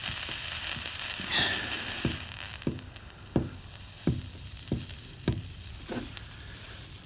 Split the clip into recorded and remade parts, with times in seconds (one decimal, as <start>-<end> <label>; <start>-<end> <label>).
0.0-1.0 recorded; 1.0-7.1 remade